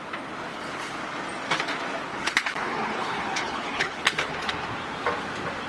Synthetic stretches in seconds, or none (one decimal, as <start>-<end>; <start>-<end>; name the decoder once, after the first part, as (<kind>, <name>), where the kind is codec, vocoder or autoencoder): 0.5-1.0 (codec, HILCodec); 2.1-4.3